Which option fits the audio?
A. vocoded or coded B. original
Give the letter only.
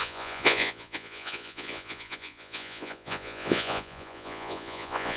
A